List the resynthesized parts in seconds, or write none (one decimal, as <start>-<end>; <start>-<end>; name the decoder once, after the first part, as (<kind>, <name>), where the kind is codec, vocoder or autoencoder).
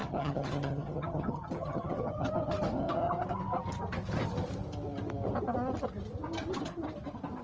0.0-2.3 (vocoder, HiFi-GAN)